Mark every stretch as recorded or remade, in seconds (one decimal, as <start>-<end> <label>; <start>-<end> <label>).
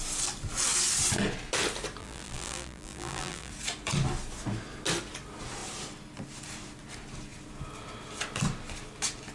0.0-2.0 recorded; 2.0-3.5 remade; 3.5-9.3 recorded